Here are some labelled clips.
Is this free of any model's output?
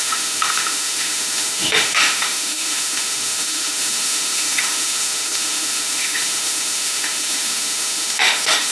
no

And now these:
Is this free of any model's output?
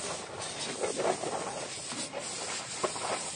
yes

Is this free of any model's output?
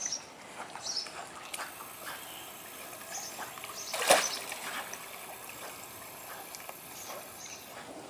yes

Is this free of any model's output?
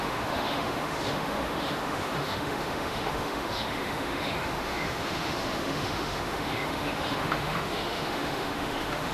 no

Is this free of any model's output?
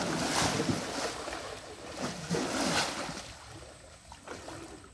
yes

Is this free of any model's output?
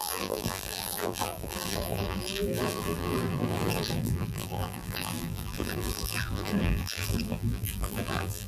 no